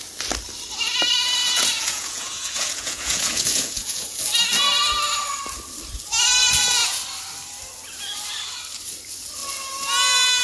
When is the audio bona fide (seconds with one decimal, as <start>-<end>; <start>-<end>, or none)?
0.0-1.4; 4.2-6.4; 7.0-10.4